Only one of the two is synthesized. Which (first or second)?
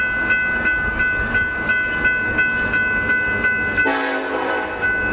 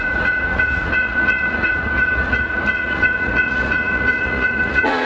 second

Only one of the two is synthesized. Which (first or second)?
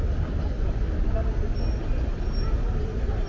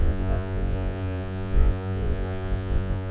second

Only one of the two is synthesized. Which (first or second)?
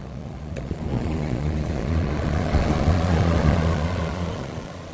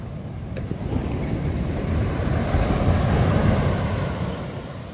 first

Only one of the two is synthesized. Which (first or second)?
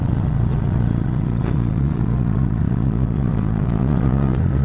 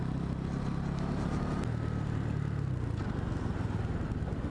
first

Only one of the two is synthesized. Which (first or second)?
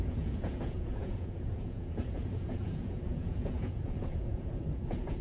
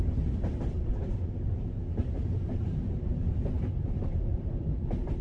first